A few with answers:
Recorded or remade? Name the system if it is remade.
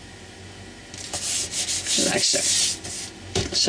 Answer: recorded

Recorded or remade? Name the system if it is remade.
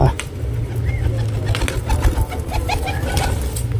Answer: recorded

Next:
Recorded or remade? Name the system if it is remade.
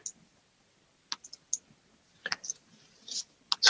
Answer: recorded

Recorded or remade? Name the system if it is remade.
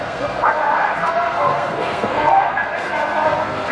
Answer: remade, codec, SNAC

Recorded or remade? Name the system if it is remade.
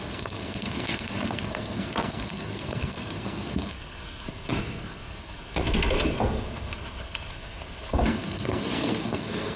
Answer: remade, codec, SNAC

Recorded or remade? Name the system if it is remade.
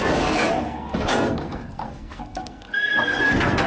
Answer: remade, codec, SNAC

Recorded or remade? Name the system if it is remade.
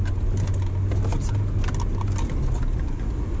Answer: recorded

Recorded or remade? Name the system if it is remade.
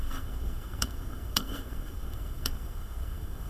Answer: remade, codec, SNAC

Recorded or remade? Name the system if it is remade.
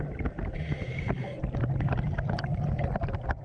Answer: recorded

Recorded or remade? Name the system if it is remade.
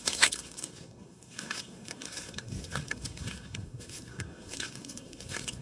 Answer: remade, codec, SNAC